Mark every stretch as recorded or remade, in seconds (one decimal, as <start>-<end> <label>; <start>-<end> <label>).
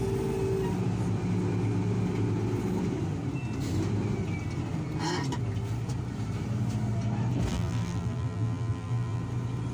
0.0-7.5 recorded; 7.5-9.2 remade; 9.2-9.7 recorded